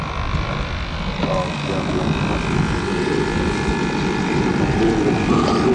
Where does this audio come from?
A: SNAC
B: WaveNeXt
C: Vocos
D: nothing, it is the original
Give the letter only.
D